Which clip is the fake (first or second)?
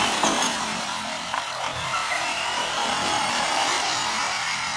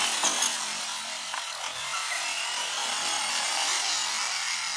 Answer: first